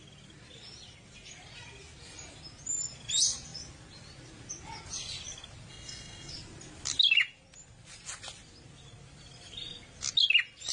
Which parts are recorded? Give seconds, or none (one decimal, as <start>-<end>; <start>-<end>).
0.0-5.7; 6.3-10.7